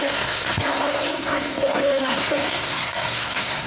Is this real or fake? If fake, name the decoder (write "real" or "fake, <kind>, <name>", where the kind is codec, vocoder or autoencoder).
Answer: fake, codec, SNAC